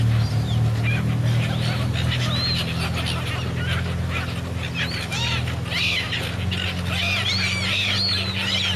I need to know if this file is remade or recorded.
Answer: recorded